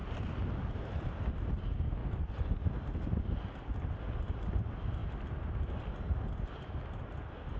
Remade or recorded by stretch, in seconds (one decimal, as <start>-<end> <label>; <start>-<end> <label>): 0.0-2.0 recorded; 2.0-4.0 remade; 4.0-7.6 recorded